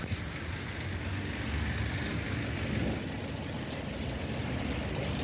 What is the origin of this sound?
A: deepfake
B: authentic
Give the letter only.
B